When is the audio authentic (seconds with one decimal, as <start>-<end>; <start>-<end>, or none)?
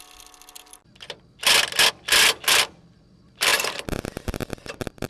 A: 0.0-5.1